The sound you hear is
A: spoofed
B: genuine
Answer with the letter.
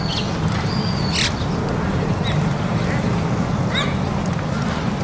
B